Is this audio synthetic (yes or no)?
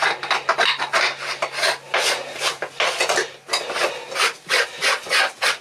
no